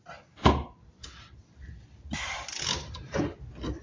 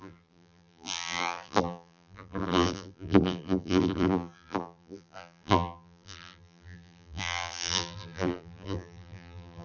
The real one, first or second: first